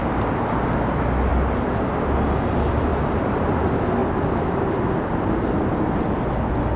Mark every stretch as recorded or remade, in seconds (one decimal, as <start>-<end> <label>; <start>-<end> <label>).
0.0-0.5 remade; 0.5-1.3 recorded; 1.3-1.8 remade; 1.8-2.9 recorded; 2.9-3.5 remade; 3.5-6.8 recorded